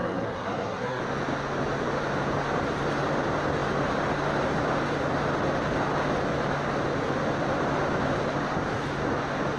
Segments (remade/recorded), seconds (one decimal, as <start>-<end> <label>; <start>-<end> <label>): 0.0-1.0 remade; 1.0-9.6 recorded

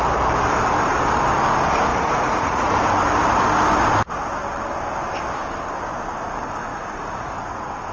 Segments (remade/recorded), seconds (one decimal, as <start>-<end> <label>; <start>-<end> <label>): 0.0-1.9 recorded; 1.9-2.7 remade; 2.7-6.7 recorded; 6.7-7.5 remade; 7.5-7.9 recorded

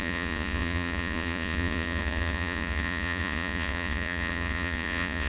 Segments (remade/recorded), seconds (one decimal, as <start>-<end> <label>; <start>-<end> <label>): 0.0-5.3 remade

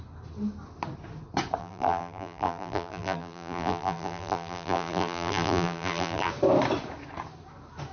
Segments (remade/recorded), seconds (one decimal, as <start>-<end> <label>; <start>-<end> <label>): 0.0-1.6 recorded; 1.6-6.3 remade; 6.3-7.9 recorded

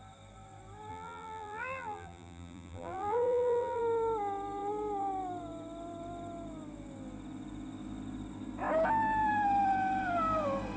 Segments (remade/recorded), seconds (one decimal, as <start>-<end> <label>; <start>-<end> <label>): 0.0-0.9 recorded; 0.9-3.8 remade; 3.8-10.8 recorded

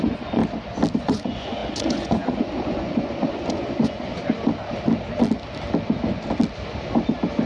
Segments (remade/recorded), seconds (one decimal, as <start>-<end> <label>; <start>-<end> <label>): 0.0-0.4 remade; 0.4-1.0 recorded; 1.0-4.1 remade; 4.1-7.5 recorded

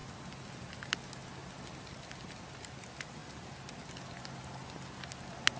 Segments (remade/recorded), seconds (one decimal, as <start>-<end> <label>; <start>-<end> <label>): 0.0-5.6 recorded